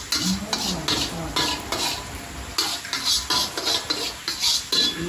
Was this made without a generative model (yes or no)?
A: yes